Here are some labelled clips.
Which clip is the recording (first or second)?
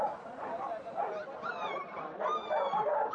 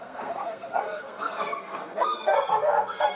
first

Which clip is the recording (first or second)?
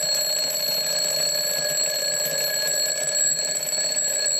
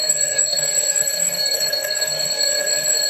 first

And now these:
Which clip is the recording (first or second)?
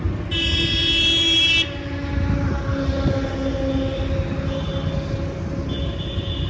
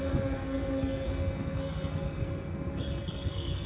first